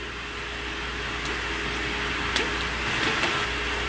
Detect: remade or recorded recorded